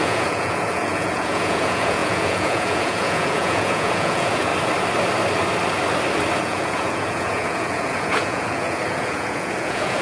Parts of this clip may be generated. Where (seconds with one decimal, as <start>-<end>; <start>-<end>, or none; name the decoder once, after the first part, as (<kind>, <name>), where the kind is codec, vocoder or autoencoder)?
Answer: 0.0-4.5 (vocoder, Vocos); 6.4-10.0